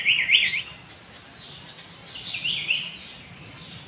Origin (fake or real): real